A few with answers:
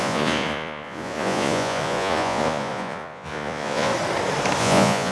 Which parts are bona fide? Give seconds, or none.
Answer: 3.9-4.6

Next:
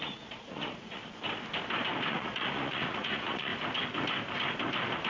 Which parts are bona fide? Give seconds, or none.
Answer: 1.0-2.1; 3.5-5.1

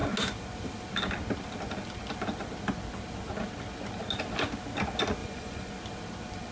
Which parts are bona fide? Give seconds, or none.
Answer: 0.0-5.2; 5.7-6.5

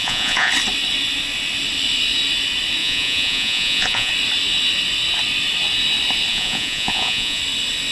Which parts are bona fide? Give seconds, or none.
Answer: 0.5-2.8; 4.1-6.3; 7.4-7.9

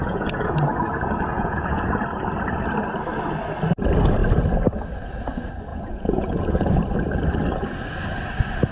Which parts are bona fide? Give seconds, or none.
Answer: 0.6-1.3; 1.9-5.7; 6.7-8.7

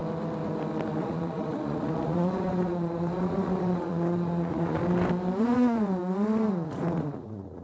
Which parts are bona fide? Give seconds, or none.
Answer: 0.0-1.0; 4.8-5.4

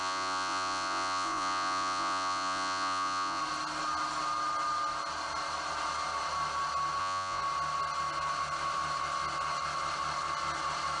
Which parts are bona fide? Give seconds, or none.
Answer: 3.4-7.0; 7.4-11.0